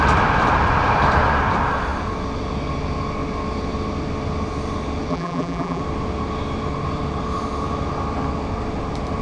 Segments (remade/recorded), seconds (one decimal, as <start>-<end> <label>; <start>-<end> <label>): 0.0-5.1 recorded; 5.1-5.8 remade; 5.8-9.2 recorded